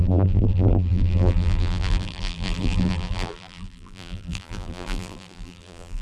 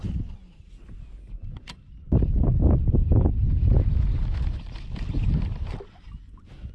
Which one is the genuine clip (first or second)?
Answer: second